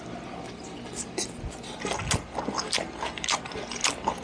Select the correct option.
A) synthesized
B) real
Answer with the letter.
B